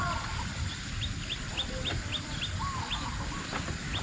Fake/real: real